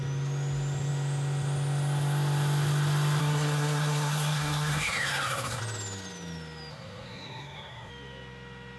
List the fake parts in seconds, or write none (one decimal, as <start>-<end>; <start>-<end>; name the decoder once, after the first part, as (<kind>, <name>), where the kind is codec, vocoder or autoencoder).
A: 3.2-5.6 (codec, SNAC); 6.7-7.9